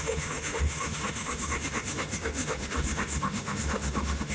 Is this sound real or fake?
fake